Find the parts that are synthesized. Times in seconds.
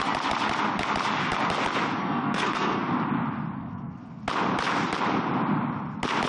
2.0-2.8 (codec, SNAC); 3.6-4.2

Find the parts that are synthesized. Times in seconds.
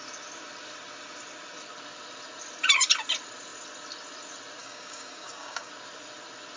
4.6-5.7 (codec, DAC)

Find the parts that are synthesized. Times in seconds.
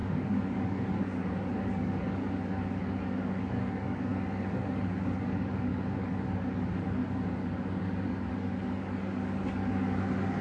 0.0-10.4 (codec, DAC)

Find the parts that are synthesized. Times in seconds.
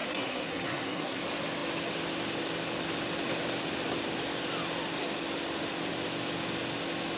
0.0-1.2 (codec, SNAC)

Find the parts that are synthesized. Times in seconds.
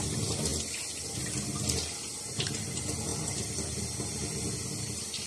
none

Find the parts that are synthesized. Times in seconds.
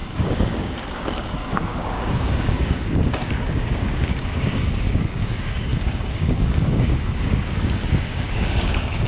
0.0-9.1 (codec, DAC)